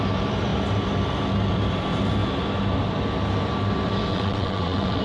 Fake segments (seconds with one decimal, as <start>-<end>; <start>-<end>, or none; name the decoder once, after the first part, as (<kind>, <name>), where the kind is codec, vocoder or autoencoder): 4.1-5.0 (vocoder, WaveNeXt)